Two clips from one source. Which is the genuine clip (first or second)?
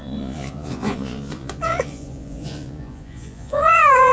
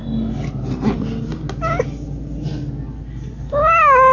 second